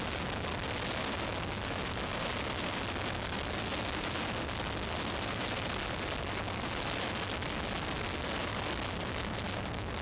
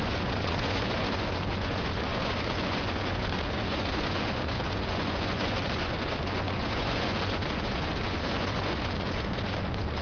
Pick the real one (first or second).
first